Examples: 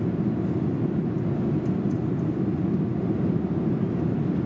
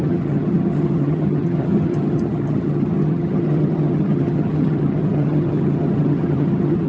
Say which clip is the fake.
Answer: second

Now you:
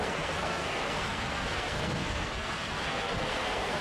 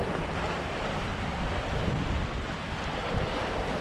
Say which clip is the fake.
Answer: first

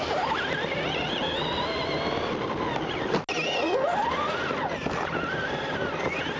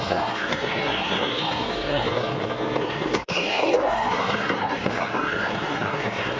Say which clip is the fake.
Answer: second